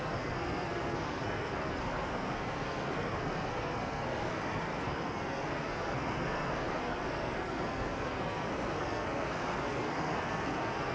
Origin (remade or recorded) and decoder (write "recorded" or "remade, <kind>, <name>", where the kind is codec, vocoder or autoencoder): remade, codec, SNAC